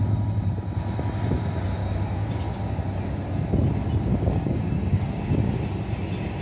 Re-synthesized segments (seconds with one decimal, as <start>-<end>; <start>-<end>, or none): 1.8-2.5; 4.1-5.1